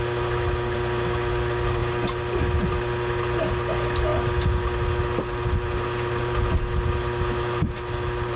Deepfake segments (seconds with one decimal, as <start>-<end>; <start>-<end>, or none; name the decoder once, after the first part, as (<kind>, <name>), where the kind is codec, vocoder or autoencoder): none